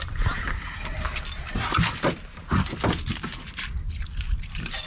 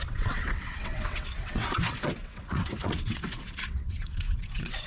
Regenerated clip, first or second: second